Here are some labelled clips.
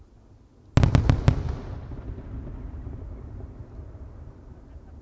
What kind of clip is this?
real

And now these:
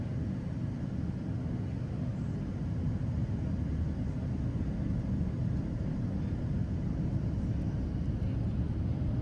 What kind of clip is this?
real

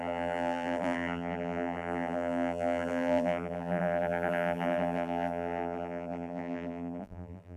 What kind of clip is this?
fake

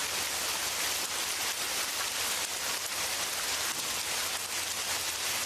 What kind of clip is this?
real